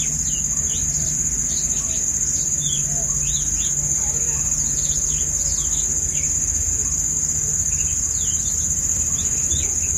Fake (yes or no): no